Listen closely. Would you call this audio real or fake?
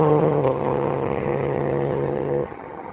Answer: fake